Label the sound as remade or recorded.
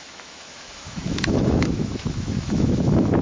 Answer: remade